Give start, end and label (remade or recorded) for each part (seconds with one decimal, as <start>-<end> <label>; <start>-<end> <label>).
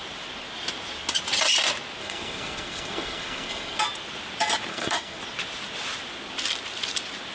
0.0-2.0 recorded; 2.0-3.8 remade; 3.8-4.7 recorded; 4.7-5.2 remade; 5.2-7.3 recorded